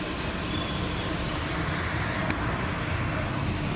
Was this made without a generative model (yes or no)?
yes